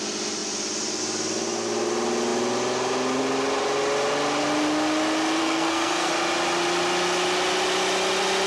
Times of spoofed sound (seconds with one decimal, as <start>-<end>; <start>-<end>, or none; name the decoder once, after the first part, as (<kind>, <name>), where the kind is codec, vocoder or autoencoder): 5.4-6.1 (codec, SNAC)